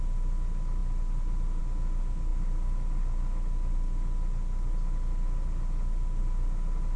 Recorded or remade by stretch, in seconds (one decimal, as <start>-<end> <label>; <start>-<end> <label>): 0.0-7.0 recorded